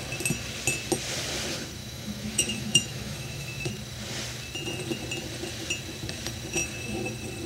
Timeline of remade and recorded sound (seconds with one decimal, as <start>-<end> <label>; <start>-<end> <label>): 0.0-1.8 recorded; 1.8-3.7 remade; 3.7-7.5 recorded